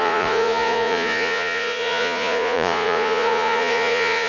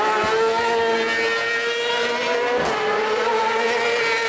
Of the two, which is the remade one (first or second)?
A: first